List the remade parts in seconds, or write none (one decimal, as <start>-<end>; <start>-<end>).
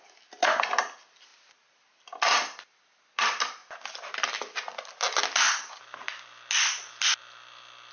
none